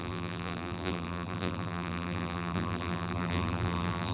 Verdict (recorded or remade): remade